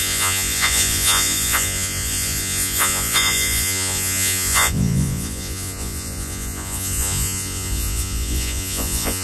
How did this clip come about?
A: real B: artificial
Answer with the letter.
B